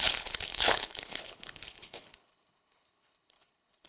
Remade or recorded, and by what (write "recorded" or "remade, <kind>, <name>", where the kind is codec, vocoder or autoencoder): remade, codec, HILCodec